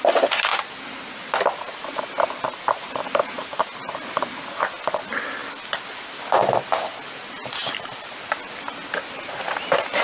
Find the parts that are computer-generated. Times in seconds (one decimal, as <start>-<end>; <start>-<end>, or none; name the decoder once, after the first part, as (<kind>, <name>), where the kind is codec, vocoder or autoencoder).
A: none